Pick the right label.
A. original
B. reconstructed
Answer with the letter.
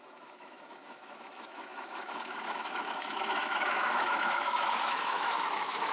B